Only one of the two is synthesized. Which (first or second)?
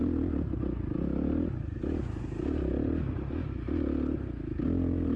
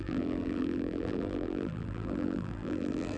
second